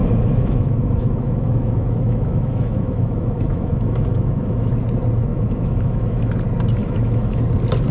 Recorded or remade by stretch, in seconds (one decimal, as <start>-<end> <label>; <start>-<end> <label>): 0.0-4.7 remade; 4.7-5.3 recorded; 5.3-6.3 remade; 6.3-6.8 recorded; 6.8-7.4 remade; 7.4-7.9 recorded

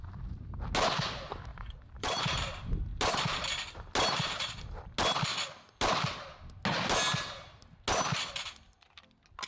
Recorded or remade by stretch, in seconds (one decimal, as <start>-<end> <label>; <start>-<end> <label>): 0.0-1.5 recorded; 1.5-2.2 remade; 2.2-9.5 recorded

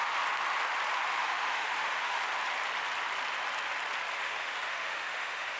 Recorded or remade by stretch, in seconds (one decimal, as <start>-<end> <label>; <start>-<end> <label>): 0.0-1.1 recorded; 1.1-2.2 remade; 2.2-4.1 recorded; 4.1-5.6 remade

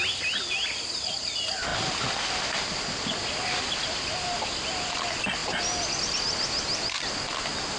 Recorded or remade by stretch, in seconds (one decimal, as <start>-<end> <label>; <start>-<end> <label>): 0.0-7.8 recorded

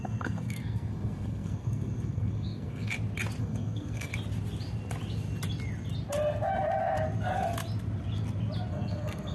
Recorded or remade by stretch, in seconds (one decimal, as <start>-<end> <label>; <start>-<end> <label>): 0.0-2.9 remade; 2.9-3.4 recorded; 3.4-4.1 remade; 4.1-8.7 recorded; 8.7-9.3 remade

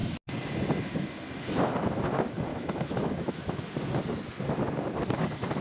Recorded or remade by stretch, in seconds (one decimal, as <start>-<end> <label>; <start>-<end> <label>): 0.0-2.5 recorded; 2.5-3.7 remade; 3.7-5.6 recorded

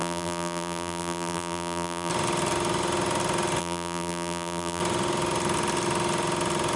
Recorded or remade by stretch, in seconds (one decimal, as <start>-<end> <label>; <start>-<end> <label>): 0.0-2.1 remade; 2.1-3.6 recorded; 3.6-4.8 remade; 4.8-6.8 recorded

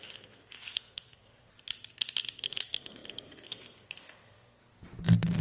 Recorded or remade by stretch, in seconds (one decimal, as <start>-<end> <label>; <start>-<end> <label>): 0.0-1.5 remade; 1.5-2.4 recorded; 2.4-4.6 remade; 4.6-5.4 recorded